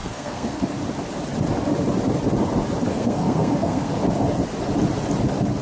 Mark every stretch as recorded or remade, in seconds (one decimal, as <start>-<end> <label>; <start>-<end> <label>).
0.0-0.6 remade; 0.6-2.9 recorded; 2.9-3.9 remade; 3.9-5.6 recorded